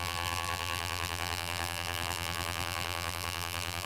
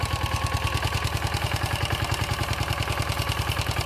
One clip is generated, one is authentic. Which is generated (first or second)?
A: first